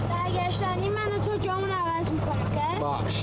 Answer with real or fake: real